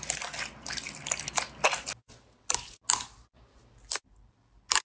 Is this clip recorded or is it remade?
recorded